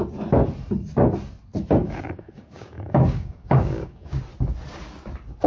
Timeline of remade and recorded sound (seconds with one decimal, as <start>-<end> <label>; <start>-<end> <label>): 0.0-1.8 recorded; 1.8-4.2 remade; 4.2-5.5 recorded